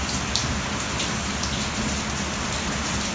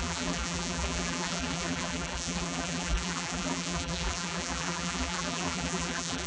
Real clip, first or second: first